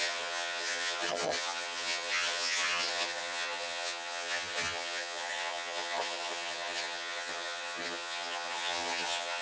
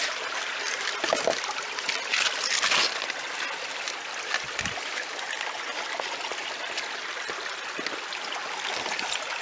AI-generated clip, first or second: first